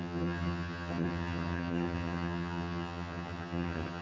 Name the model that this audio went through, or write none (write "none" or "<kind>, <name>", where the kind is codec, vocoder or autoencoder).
vocoder, HiFi-GAN